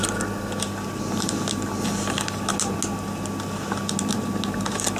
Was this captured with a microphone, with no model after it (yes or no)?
yes